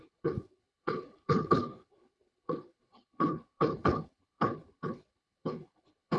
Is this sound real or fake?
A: fake